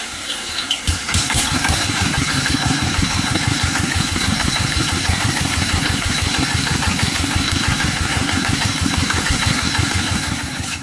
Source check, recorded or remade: remade